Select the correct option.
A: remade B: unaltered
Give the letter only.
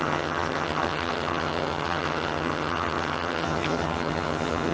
A